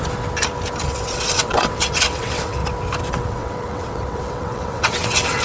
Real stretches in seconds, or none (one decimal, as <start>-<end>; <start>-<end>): 0.0-0.9; 2.6-3.1